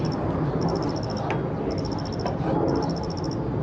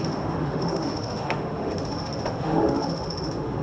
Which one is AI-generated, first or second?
second